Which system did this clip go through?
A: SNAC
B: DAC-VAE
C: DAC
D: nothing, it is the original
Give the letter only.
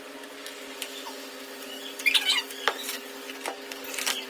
D